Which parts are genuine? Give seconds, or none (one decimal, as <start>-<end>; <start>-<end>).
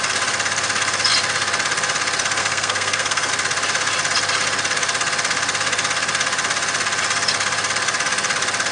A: 0.0-2.4; 3.3-8.7